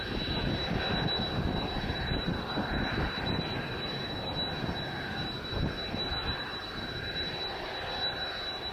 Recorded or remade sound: recorded